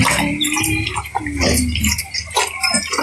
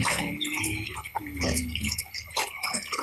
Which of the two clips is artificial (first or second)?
second